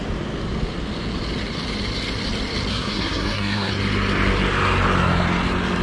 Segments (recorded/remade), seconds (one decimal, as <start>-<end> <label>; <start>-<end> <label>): 0.0-2.7 recorded; 2.7-3.7 remade; 3.7-5.8 recorded